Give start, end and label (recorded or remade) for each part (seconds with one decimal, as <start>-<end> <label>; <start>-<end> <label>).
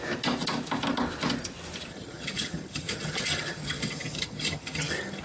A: 0.0-1.9 recorded; 1.9-5.2 remade